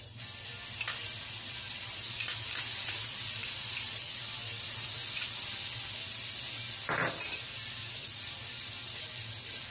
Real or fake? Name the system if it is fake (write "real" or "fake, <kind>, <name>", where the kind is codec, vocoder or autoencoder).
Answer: real